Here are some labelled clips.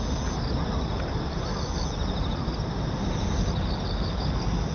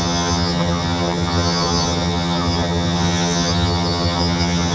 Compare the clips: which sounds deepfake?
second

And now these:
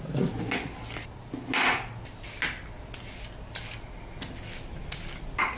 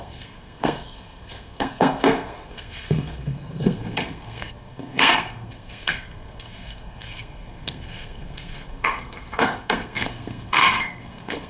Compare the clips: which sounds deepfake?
second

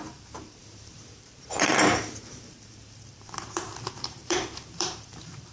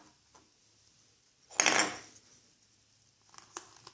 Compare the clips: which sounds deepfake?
first